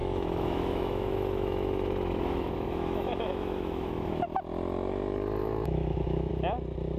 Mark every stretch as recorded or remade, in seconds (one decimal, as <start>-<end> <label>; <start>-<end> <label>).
0.0-4.2 remade; 4.2-5.4 recorded; 5.4-6.3 remade; 6.3-7.0 recorded